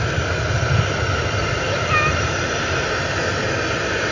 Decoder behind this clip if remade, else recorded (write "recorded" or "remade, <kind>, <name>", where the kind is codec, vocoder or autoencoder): recorded